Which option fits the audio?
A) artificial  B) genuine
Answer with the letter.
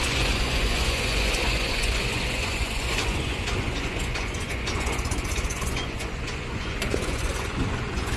A